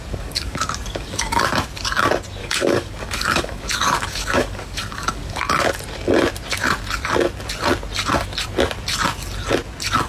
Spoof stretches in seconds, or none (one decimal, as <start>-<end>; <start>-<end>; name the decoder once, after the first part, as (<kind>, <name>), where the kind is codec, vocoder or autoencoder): 0.0-1.4 (codec, DAC); 2.4-5.5